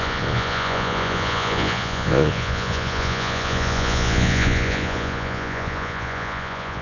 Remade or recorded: remade